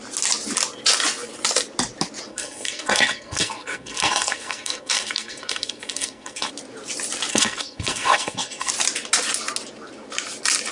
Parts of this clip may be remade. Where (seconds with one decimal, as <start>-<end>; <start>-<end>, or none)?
2.3-6.5; 7.3-8.7